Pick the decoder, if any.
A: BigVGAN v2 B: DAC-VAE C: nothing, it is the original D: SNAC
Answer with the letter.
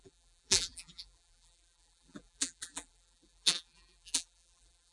A